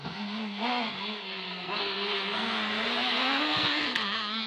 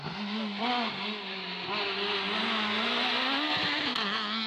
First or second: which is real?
second